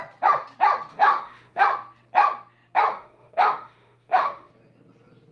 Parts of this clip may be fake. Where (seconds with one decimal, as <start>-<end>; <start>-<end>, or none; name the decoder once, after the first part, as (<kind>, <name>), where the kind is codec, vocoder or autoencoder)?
0.9-1.6 (autoencoder, DAC-VAE); 2.9-4.5